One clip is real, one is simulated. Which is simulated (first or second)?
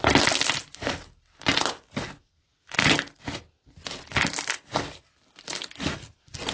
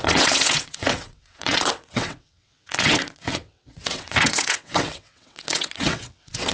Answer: second